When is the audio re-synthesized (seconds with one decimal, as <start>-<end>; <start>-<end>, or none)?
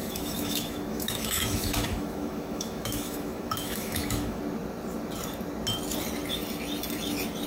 0.0-4.4